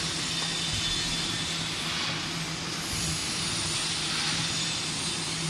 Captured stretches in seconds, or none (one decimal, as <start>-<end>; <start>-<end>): 0.0-5.5